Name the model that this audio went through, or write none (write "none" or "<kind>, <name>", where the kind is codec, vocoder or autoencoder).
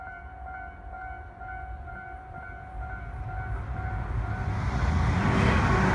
none